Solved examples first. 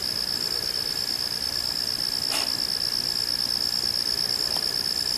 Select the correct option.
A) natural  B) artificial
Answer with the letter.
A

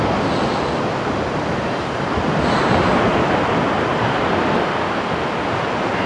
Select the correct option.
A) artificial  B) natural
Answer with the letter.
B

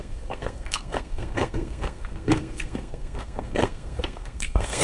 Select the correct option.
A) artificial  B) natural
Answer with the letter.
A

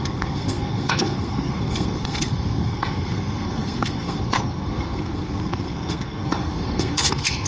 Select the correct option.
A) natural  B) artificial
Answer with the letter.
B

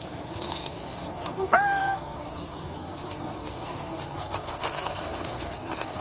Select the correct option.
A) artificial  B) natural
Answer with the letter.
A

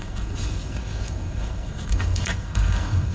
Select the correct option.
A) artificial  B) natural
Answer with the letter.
A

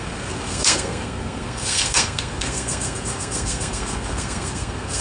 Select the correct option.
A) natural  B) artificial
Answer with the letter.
B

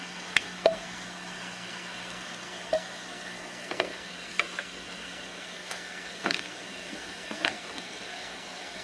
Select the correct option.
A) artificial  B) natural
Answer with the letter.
A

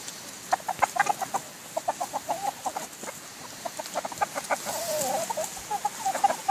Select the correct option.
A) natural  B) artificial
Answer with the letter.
A